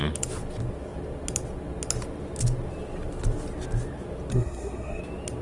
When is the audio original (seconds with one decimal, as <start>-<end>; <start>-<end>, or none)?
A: 0.0-4.3; 5.0-5.4